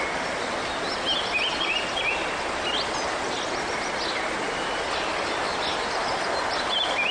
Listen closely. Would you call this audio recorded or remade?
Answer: recorded